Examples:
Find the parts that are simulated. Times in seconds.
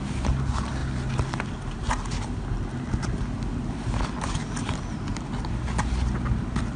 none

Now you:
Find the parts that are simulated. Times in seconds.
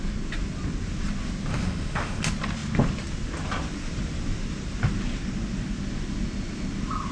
1.5-2.2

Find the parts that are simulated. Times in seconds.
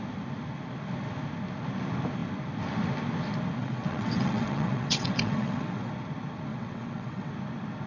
3.6-5.9; 6.5-7.3